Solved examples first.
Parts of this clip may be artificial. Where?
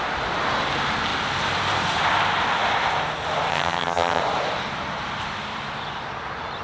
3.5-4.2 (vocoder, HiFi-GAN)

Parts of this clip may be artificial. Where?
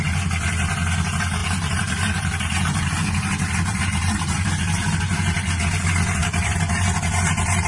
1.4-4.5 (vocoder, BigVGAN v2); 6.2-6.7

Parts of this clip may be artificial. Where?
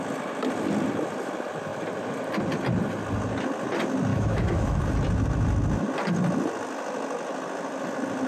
4.1-4.8 (autoencoder, DAC-VAE)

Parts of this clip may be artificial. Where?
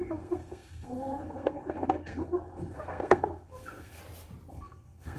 0.0-4.0 (codec, SNAC); 4.5-5.2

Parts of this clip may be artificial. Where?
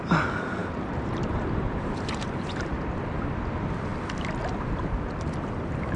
0.6-2.6 (vocoder, BigVGAN v2)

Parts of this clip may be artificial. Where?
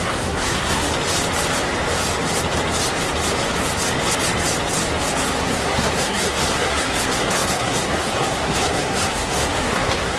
0.0-0.9 (codec, SNAC); 5.4-10.2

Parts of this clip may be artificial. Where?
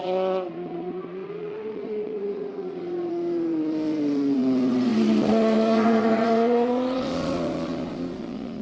0.0-8.6 (vocoder, Vocos)